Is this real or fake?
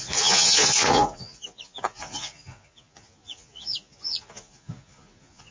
fake